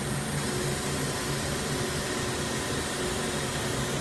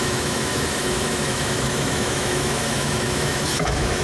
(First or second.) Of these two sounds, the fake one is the second